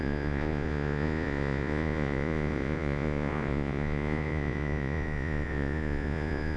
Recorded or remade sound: remade